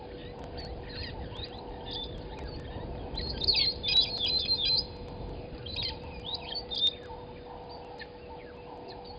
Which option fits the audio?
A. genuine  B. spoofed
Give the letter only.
A